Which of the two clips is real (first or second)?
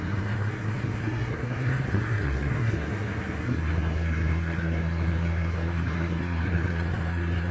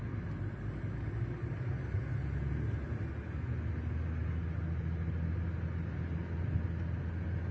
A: second